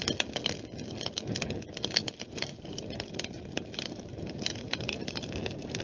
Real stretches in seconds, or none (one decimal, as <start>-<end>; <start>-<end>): 0.0-2.0